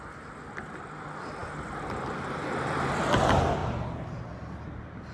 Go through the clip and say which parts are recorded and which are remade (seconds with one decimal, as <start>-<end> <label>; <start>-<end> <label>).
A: 0.0-3.6 recorded; 3.6-4.3 remade; 4.3-5.1 recorded